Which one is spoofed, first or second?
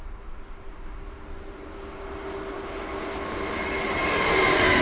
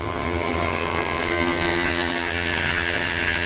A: second